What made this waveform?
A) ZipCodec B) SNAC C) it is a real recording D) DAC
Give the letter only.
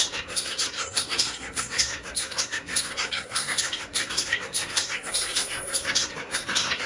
B